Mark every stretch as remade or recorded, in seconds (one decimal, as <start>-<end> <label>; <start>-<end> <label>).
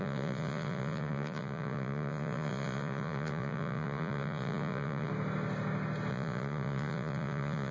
0.0-5.1 remade; 5.1-6.1 recorded; 6.1-7.7 remade